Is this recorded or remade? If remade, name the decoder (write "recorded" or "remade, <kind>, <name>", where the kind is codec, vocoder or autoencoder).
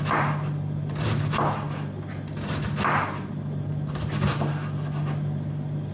recorded